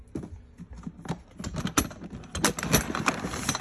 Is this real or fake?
real